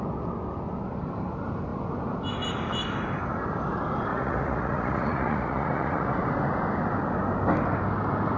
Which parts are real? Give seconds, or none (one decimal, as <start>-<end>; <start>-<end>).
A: 0.0-4.1; 6.1-8.4